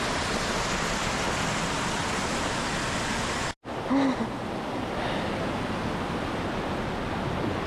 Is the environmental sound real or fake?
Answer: real